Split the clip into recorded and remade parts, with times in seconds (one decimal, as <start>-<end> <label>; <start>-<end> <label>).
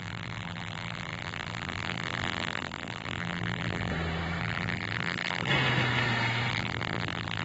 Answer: 0.0-3.9 remade; 3.9-4.4 recorded; 4.4-5.5 remade; 5.5-6.5 recorded; 6.5-7.4 remade